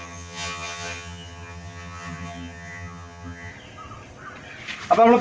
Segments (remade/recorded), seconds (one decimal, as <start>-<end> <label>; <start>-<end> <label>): 0.0-3.5 remade; 3.5-5.2 recorded